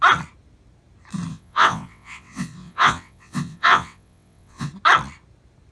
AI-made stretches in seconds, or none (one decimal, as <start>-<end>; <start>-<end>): 1.3-4.7